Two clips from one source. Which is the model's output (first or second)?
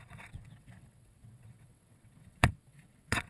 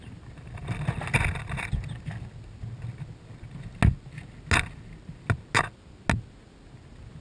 first